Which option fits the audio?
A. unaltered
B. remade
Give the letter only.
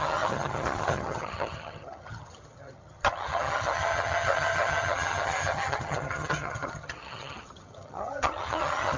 B